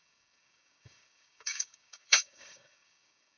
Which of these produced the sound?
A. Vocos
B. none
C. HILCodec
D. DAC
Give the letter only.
D